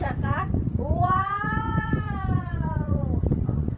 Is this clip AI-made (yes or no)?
yes